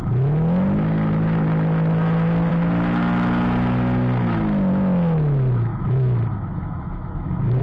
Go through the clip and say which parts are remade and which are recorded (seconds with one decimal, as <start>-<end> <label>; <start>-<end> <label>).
0.0-5.7 recorded; 5.7-7.6 remade